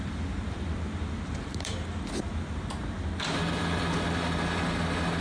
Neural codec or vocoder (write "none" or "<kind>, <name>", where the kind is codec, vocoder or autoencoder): none